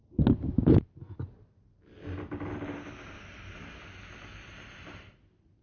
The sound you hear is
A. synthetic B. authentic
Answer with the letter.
B